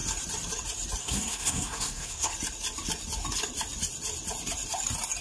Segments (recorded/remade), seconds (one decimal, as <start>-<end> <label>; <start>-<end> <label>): 0.0-1.0 recorded; 1.0-2.3 remade; 2.3-5.2 recorded